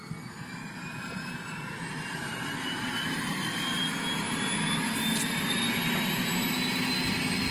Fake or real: real